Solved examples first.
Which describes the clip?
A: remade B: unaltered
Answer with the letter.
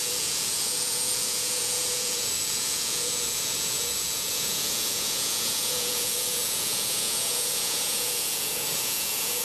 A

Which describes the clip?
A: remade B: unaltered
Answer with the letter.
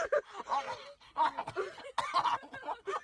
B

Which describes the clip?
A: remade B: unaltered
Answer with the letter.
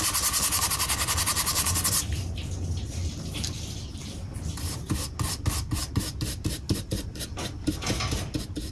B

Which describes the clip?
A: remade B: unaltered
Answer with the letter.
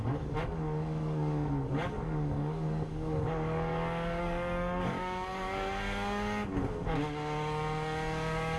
A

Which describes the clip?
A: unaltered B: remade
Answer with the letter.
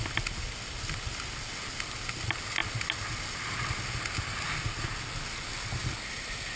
A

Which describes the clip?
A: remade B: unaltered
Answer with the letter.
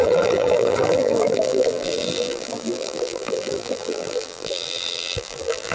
A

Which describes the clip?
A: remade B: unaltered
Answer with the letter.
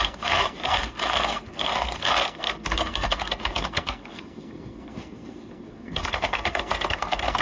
A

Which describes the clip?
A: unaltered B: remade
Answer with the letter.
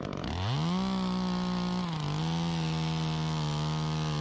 A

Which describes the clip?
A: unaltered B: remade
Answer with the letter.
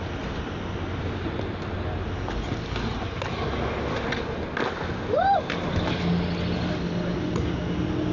A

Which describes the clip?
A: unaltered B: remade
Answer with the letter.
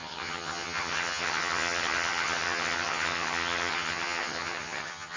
B